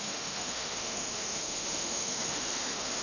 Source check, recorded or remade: remade